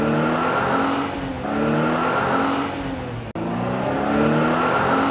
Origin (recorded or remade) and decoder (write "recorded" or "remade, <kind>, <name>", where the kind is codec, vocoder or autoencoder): recorded